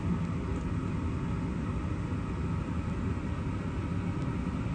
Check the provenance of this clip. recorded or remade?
recorded